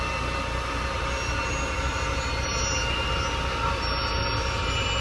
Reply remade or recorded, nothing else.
recorded